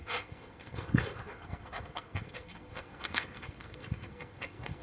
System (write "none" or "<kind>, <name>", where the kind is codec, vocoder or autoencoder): codec, SNAC